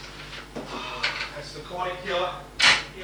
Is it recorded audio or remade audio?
recorded